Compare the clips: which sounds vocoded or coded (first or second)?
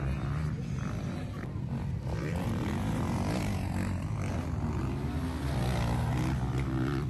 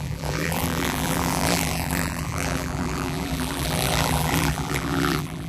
second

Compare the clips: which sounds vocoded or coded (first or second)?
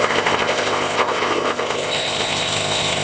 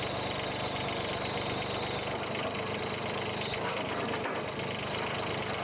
first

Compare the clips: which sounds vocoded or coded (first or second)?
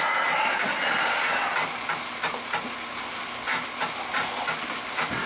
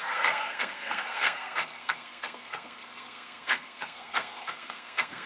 second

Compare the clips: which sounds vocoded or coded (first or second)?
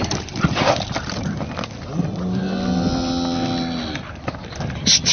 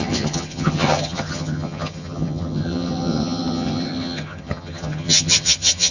second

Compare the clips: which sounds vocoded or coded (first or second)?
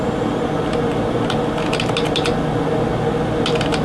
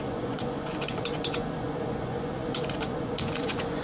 second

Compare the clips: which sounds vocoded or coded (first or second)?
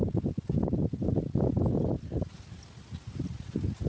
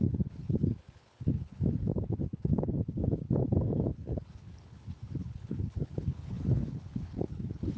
second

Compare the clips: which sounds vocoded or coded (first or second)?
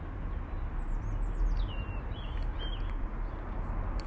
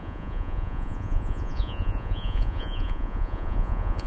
second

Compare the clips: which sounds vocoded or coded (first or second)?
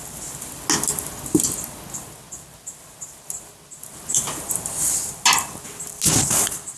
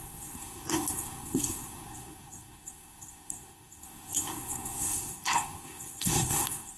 second